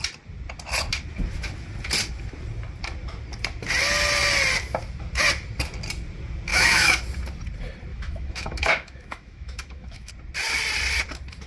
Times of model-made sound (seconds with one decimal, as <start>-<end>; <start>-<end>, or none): 6.5-7.0; 7.9-10.1